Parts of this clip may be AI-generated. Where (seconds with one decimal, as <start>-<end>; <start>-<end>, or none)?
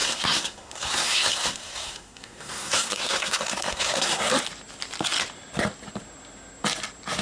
0.0-4.3